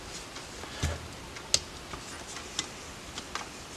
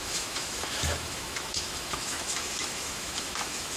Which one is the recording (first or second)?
first